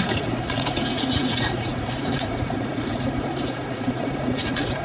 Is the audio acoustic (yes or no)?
no